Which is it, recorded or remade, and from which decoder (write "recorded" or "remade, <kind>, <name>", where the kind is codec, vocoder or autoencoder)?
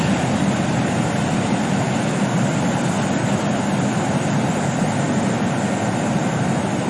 recorded